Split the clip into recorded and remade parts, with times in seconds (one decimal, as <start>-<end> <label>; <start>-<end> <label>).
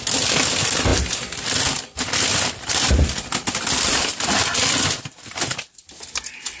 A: 0.0-6.6 recorded